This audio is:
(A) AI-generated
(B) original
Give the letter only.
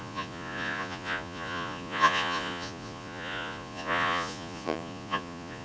A